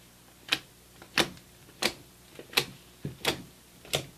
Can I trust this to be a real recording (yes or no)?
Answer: yes